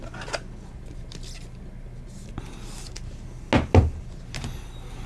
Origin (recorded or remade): recorded